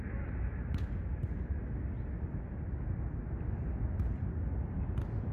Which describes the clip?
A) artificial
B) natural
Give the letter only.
B